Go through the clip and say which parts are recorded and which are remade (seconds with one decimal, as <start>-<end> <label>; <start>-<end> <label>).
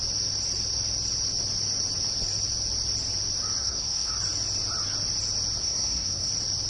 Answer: 0.0-3.6 recorded; 3.6-4.1 remade; 4.1-5.6 recorded; 5.6-6.3 remade; 6.3-6.7 recorded